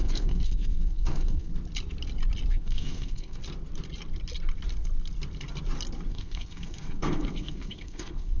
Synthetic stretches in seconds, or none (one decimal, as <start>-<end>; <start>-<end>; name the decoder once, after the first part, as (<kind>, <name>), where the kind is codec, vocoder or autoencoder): 0.0-1.5 (codec, SNAC); 2.5-3.4; 6.1-8.4